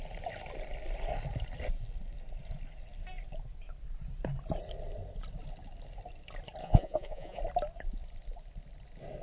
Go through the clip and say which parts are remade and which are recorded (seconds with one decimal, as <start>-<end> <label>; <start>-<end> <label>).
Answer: 0.0-6.6 recorded; 6.6-7.4 remade; 7.4-9.2 recorded